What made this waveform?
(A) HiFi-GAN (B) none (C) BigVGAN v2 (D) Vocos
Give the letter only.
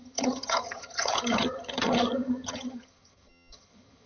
A